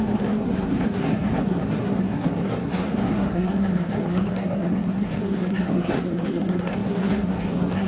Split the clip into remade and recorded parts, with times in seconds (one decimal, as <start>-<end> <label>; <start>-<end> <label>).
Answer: 0.0-7.9 remade